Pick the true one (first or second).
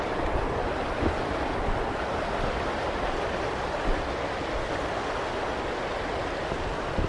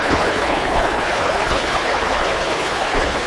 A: first